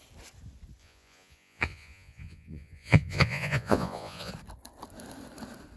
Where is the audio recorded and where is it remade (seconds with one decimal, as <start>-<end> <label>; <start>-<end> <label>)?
0.0-0.8 recorded; 0.8-4.3 remade; 4.3-5.8 recorded